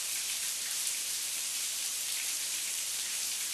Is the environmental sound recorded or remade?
remade